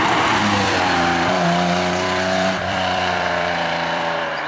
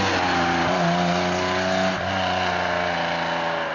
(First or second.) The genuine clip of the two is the second